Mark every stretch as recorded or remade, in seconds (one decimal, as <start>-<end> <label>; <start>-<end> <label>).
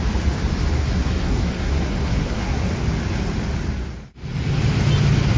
0.0-0.8 recorded; 0.8-2.7 remade; 2.7-5.4 recorded